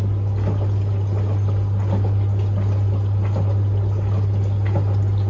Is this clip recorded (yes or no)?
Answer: yes